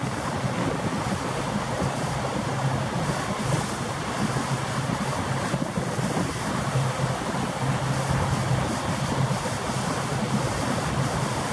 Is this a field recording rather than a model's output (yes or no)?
yes